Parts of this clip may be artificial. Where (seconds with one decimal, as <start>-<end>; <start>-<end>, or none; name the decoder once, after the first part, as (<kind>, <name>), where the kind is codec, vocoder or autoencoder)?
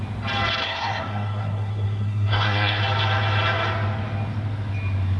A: 0.6-2.8 (codec, SNAC)